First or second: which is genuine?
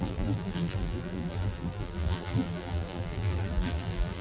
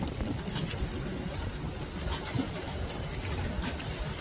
second